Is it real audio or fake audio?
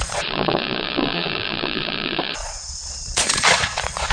fake